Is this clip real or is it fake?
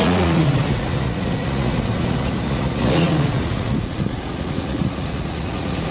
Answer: fake